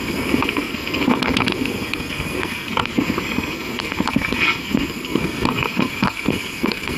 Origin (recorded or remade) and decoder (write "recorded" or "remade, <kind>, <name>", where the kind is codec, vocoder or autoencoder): remade, codec, SNAC